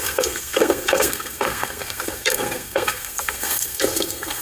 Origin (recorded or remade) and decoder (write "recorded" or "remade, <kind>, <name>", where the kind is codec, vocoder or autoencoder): remade, codec, SNAC